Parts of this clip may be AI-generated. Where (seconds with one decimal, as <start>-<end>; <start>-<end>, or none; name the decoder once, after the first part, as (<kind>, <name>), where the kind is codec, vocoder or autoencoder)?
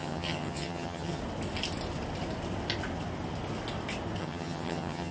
0.0-1.2 (vocoder, HiFi-GAN); 4.2-5.1